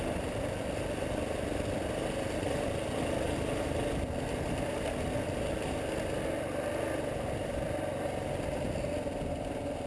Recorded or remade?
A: recorded